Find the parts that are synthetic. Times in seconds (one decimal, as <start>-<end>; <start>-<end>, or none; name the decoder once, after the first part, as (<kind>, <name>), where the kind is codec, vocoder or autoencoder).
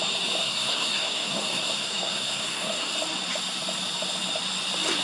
0.4-2.9 (codec, SNAC)